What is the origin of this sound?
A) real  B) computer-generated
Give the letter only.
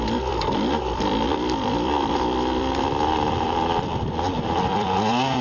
B